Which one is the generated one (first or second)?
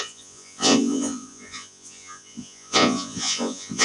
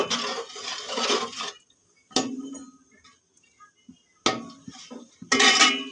first